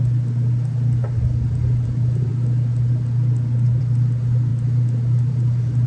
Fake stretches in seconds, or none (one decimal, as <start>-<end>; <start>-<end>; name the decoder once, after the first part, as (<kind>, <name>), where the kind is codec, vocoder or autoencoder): none